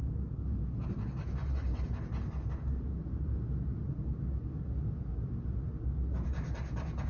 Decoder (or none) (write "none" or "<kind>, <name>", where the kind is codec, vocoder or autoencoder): none